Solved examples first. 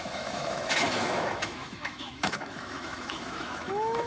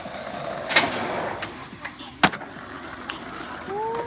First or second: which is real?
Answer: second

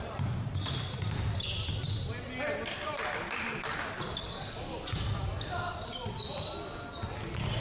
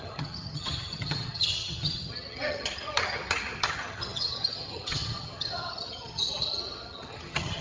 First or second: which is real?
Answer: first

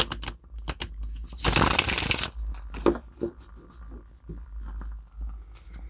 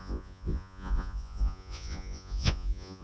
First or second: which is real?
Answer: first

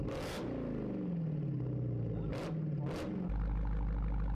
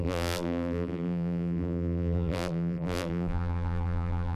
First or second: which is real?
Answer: first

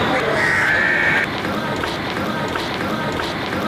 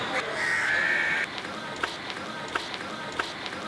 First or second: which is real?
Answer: second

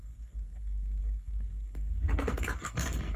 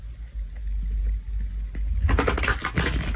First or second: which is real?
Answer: second